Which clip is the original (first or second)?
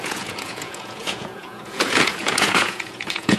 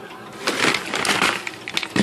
second